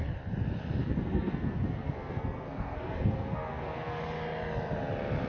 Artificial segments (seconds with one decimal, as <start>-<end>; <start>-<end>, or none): 0.8-4.0